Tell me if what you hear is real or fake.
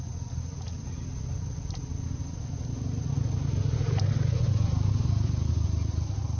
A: real